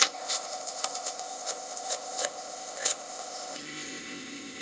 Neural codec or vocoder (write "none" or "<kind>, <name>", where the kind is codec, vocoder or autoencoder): codec, ZipCodec